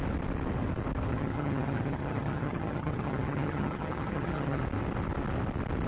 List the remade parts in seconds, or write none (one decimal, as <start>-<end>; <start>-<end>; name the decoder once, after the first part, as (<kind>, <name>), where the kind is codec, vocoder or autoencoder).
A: 1.1-4.6 (vocoder, HiFi-GAN)